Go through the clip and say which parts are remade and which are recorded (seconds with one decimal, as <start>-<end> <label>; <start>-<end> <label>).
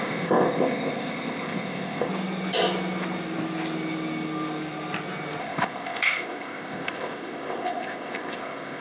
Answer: 0.0-2.1 remade; 2.1-5.4 recorded; 5.4-8.8 remade